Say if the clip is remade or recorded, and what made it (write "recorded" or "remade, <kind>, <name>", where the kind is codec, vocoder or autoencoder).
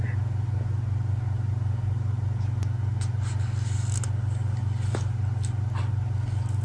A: recorded